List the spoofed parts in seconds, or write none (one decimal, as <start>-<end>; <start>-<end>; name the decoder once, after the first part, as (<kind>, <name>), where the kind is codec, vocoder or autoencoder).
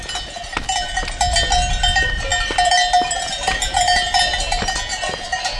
none